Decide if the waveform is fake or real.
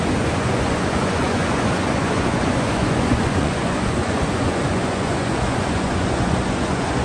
fake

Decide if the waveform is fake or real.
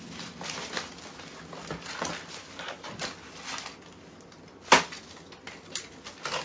real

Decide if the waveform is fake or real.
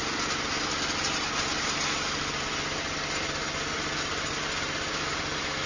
real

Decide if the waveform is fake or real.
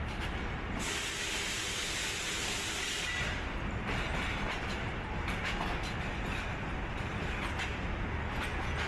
real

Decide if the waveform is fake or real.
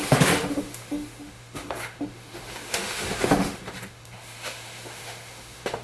fake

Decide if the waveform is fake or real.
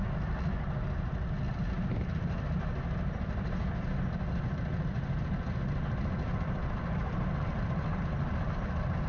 real